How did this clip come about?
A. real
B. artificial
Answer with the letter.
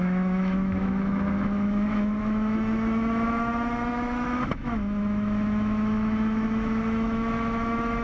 B